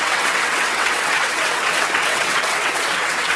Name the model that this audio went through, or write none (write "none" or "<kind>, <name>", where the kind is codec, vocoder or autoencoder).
vocoder, WaveNeXt